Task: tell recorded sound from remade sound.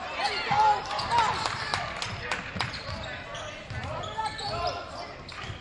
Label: recorded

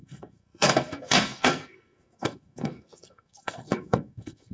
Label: remade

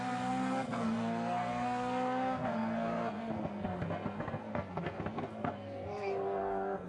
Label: remade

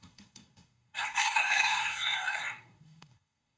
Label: remade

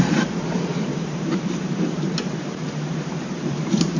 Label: remade